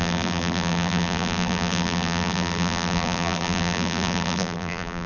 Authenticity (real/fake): fake